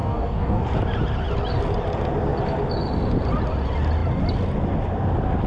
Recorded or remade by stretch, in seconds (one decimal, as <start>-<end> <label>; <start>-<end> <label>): 0.0-0.6 remade; 0.6-5.5 recorded